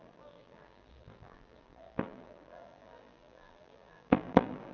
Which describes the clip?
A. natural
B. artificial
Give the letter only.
B